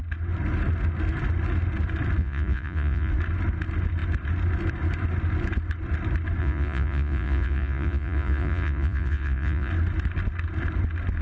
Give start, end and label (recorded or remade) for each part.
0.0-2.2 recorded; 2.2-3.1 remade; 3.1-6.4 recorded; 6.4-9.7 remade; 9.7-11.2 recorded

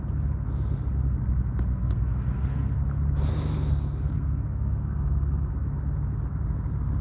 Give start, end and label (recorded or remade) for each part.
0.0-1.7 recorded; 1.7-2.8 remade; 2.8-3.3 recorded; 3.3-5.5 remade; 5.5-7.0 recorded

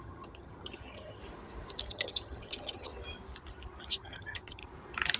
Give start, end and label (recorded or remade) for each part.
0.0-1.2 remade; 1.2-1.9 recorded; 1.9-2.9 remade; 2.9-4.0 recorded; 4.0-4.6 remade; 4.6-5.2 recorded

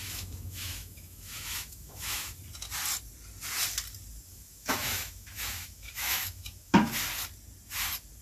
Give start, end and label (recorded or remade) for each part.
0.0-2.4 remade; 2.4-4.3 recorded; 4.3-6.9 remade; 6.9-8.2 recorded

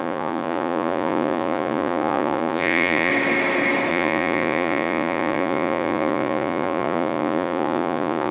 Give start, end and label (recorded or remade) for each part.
0.0-3.1 remade; 3.1-3.9 recorded; 3.9-8.3 remade

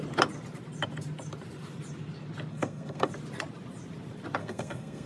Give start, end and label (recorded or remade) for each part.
0.0-2.5 recorded; 2.5-3.1 remade; 3.1-4.4 recorded; 4.4-5.1 remade

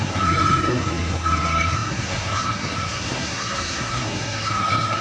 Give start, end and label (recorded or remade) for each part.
0.0-5.0 remade